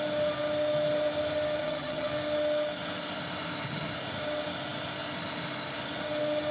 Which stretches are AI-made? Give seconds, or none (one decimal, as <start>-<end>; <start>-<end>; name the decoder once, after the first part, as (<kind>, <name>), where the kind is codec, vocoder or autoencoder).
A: 1.6-2.1 (vocoder, HiFi-GAN)